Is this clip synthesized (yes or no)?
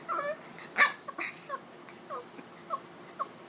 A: no